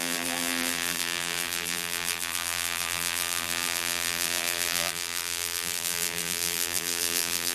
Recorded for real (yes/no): no